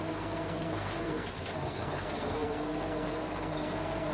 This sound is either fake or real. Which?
fake